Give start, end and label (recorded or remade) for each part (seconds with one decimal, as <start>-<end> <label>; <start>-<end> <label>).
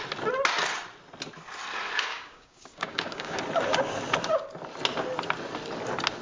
0.0-2.1 recorded; 2.1-3.4 remade; 3.4-6.2 recorded